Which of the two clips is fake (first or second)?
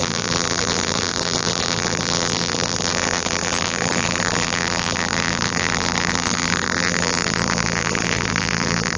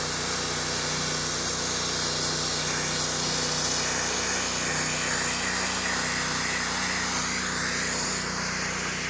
first